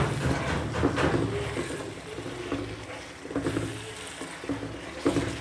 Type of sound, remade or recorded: recorded